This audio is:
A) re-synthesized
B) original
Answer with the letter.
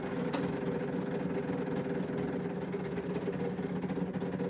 B